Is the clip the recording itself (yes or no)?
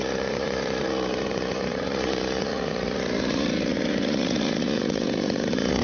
no